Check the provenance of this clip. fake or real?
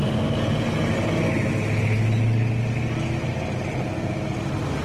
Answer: real